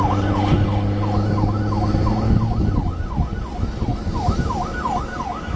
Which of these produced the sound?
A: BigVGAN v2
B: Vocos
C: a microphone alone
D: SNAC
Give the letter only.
C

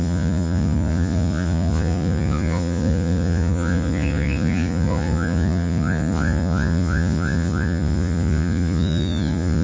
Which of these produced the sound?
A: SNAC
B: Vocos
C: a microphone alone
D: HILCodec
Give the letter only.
B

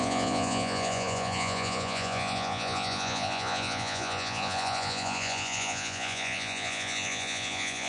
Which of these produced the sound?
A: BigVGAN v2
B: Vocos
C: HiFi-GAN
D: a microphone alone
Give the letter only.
B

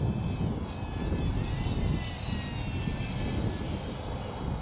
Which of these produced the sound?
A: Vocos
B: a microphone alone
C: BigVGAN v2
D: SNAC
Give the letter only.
B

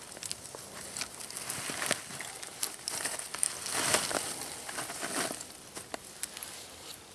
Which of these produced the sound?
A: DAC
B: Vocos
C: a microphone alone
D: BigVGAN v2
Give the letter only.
C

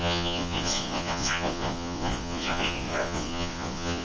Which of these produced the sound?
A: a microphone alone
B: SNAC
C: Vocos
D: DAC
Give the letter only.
C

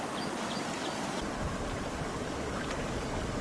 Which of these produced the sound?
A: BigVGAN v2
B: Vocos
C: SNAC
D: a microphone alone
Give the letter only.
D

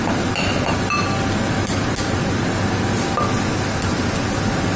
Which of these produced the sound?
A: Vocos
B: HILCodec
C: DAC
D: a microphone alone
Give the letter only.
D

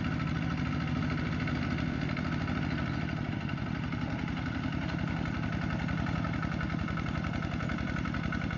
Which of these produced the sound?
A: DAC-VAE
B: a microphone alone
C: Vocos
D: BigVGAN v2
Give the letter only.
B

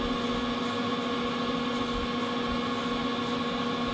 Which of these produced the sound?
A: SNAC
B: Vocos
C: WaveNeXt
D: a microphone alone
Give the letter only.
D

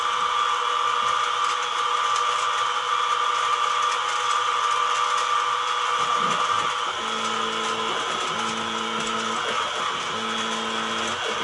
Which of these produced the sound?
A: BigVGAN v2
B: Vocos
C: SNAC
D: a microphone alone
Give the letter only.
D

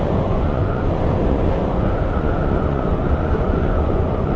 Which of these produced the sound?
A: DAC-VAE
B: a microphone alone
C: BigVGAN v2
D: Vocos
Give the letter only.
D